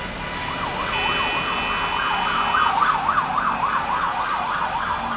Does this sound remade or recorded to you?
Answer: recorded